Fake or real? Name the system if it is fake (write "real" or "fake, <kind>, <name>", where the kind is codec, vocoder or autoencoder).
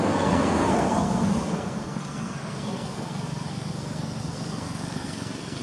fake, codec, SNAC